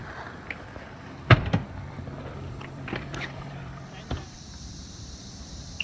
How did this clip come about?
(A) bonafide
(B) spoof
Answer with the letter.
B